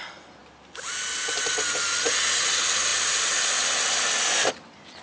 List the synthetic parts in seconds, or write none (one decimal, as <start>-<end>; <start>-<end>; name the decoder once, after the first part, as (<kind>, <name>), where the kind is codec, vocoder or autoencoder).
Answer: 0.4-2.2 (vocoder, BigVGAN v2)